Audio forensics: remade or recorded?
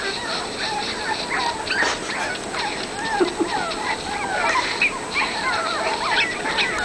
recorded